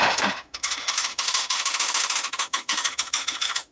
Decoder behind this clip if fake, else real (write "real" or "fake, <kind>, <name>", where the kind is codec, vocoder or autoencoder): fake, autoencoder, DAC-VAE